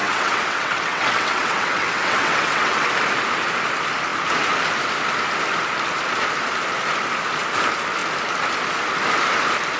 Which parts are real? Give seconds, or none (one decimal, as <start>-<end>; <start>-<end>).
2.9-9.8